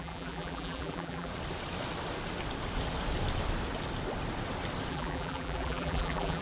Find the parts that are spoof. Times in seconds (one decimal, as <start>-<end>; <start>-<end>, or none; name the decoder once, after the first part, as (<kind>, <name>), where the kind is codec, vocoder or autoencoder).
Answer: 0.0-1.3 (vocoder, BigVGAN v2); 4.9-6.4